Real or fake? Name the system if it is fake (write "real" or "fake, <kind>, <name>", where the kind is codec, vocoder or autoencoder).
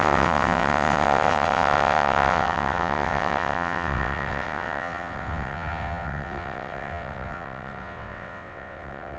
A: fake, vocoder, WaveNeXt